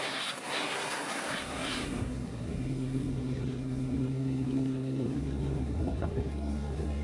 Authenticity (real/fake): fake